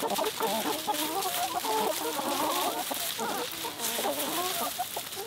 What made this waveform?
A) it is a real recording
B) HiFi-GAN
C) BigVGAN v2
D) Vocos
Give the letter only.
A